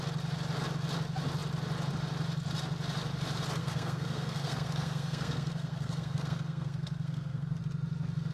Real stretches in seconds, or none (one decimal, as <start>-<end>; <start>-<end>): 0.0-3.6; 7.6-8.3